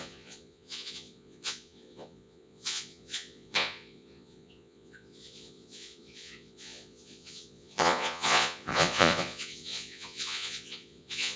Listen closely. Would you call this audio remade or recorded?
remade